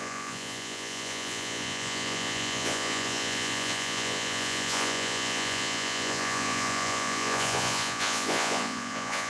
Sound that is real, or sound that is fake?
fake